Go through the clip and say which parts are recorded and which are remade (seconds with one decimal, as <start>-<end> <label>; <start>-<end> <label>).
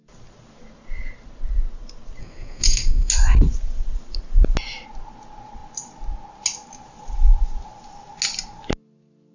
0.0-2.2 recorded; 2.2-3.1 remade; 3.1-9.3 recorded